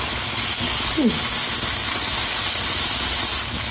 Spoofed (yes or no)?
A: no